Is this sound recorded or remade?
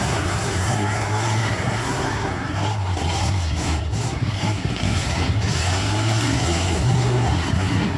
remade